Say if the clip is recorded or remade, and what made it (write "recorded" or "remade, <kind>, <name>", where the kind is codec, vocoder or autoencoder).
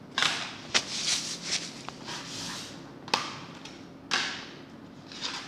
recorded